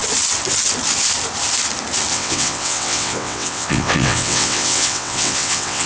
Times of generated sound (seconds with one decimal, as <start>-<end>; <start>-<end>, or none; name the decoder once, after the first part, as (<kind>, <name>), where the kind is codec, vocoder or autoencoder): 2.1-5.9 (vocoder, WaveNeXt)